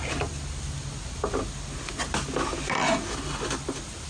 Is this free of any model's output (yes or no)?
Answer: yes